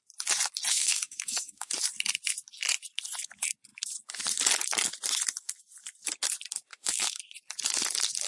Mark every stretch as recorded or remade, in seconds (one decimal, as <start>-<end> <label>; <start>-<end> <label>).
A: 0.0-0.7 recorded; 0.7-1.7 remade; 1.7-6.7 recorded; 6.7-7.2 remade; 7.2-8.3 recorded